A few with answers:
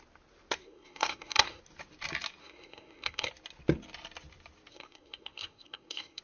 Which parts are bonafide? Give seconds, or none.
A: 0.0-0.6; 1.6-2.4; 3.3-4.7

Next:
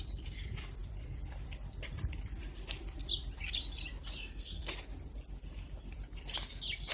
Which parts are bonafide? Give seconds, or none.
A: 0.0-4.2; 4.7-6.9

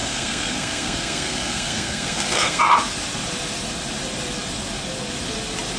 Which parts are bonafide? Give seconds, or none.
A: 2.6-5.8